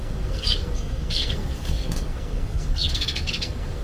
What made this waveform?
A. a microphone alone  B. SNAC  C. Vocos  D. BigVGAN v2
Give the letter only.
B